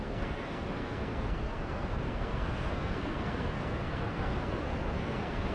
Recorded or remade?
remade